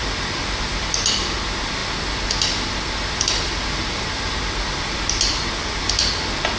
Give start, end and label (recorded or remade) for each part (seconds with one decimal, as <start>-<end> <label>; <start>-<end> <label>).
0.0-6.6 recorded